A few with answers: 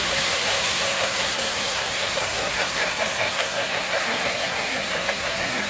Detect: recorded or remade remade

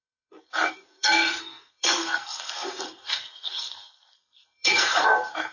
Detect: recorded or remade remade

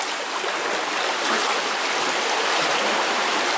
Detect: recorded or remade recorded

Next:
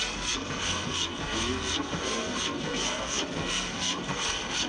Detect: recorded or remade remade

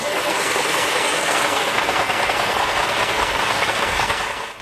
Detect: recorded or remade remade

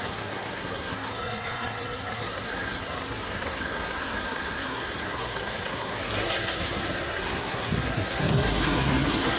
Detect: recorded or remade remade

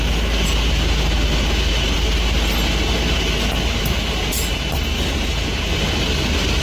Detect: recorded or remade recorded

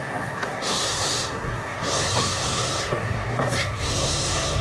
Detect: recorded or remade remade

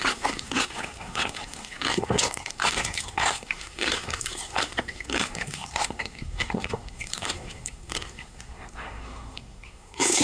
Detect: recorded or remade remade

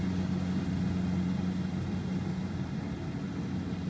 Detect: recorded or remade recorded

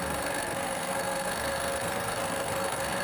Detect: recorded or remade remade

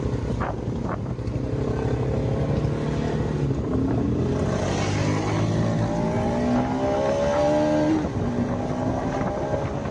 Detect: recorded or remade recorded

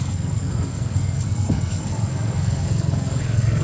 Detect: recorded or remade remade